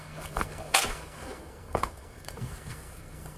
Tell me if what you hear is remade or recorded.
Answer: remade